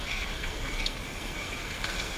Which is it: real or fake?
fake